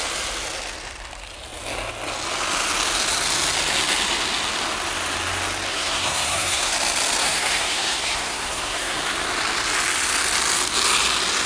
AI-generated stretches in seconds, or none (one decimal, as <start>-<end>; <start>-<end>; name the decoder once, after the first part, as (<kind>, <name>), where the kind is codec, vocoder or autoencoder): 5.7-6.7 (codec, SNAC); 7.2-9.0